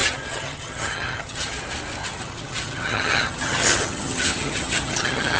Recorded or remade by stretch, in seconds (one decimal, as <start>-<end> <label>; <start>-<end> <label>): 0.0-1.6 remade; 1.6-2.0 recorded; 2.0-5.4 remade